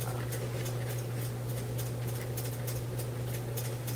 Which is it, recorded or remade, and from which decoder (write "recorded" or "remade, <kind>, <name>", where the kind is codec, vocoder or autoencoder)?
recorded